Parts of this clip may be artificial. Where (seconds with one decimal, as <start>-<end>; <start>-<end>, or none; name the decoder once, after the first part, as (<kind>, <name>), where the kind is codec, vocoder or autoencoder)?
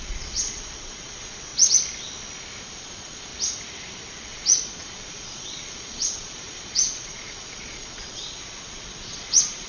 0.0-1.5 (vocoder, Vocos); 2.6-3.3; 4.1-9.7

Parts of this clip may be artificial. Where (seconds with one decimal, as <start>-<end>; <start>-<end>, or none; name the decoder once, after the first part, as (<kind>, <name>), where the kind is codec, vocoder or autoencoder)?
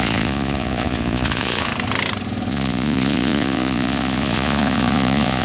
0.0-1.7 (vocoder, Vocos); 2.5-5.4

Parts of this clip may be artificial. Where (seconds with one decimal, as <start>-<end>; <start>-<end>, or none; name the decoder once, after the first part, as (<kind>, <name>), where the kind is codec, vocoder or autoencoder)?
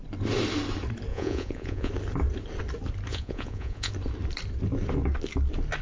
1.1-1.9 (vocoder, Vocos); 3.1-3.9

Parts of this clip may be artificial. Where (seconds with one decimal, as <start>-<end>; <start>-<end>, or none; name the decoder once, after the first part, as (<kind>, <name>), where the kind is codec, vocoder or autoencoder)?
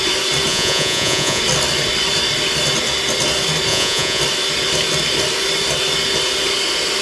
0.5-1.4 (vocoder, Vocos); 3.7-4.2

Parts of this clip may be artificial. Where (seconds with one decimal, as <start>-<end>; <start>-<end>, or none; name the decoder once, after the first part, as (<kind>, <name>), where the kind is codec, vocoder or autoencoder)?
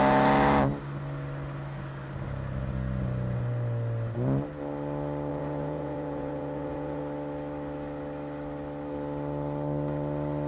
5.3-7.0 (vocoder, Vocos)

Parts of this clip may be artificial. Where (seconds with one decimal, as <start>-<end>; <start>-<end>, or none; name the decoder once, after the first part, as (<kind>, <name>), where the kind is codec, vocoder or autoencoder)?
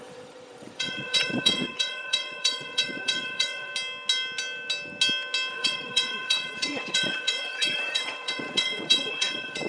0.0-3.7 (vocoder, Vocos); 5.5-9.7